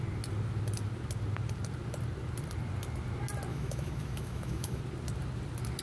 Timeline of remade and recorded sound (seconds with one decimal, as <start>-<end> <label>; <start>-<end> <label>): 0.0-3.5 recorded; 3.5-4.8 remade; 4.8-5.8 recorded